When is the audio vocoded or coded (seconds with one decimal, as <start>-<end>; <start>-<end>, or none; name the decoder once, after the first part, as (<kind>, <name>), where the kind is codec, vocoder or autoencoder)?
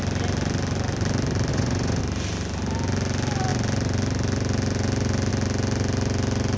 1.5-2.0 (vocoder, Vocos)